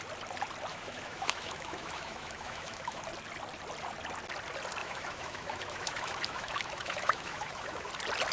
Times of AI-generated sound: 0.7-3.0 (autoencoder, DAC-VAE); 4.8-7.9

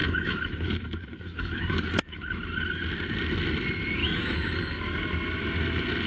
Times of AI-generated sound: 0.0-2.4 (autoencoder, DAC-VAE); 4.0-4.8

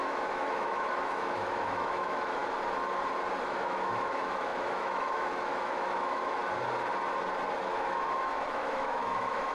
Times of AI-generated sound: 0.0-2.4 (autoencoder, DAC-VAE); 3.4-6.4; 7.6-9.5

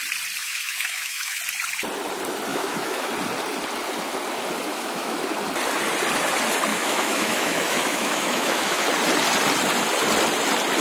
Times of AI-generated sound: 0.4-1.4 (autoencoder, DAC-VAE); 2.5-3.1; 4.7-5.2; 6.7-8.8

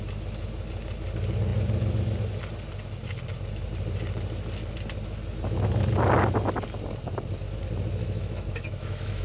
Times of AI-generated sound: 8.0-9.2 (autoencoder, DAC-VAE)